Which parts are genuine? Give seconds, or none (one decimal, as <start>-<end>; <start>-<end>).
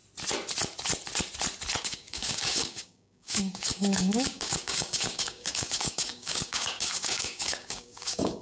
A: 0.0-1.8